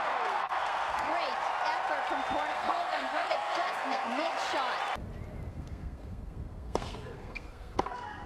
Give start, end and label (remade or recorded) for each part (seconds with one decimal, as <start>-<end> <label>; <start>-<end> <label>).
0.0-1.1 remade; 1.1-2.5 recorded; 2.5-4.3 remade; 4.3-5.5 recorded; 5.5-8.3 remade